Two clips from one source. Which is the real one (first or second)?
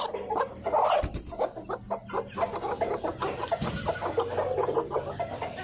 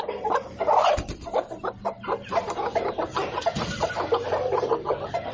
first